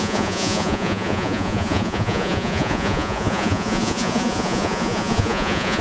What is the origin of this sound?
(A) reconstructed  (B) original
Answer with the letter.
A